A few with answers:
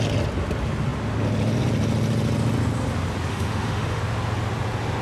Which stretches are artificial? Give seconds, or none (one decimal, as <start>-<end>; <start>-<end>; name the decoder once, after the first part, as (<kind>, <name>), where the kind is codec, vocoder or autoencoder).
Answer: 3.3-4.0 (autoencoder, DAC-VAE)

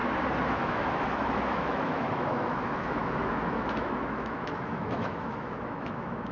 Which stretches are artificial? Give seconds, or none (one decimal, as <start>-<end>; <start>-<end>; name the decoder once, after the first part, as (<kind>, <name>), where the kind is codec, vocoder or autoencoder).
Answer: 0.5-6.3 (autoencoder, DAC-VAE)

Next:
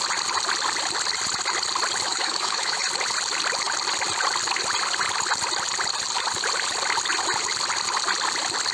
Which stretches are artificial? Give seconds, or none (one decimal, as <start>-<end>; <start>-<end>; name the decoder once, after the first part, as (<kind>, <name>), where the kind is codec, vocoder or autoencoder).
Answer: 2.1-2.8 (autoencoder, DAC-VAE)